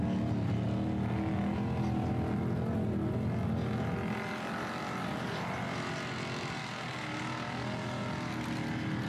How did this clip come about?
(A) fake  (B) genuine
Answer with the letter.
B